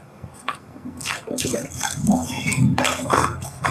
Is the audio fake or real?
fake